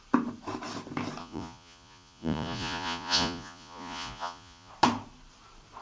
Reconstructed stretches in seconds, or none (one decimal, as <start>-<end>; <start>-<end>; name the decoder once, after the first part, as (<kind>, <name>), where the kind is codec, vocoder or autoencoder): 1.2-4.7 (vocoder, Vocos)